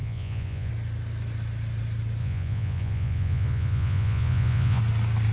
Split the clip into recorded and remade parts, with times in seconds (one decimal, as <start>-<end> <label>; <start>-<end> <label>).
0.0-0.7 remade; 0.7-2.2 recorded; 2.2-4.8 remade; 4.8-5.3 recorded